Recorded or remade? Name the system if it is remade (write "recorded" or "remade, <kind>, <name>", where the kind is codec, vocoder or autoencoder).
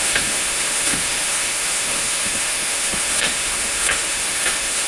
remade, autoencoder, DAC-VAE